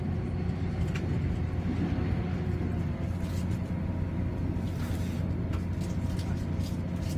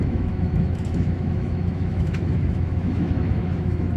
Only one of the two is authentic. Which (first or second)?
first